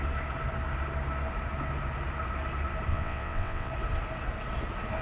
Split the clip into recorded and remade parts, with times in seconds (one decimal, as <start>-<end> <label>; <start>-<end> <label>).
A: 0.0-2.9 recorded; 2.9-3.7 remade; 3.7-5.0 recorded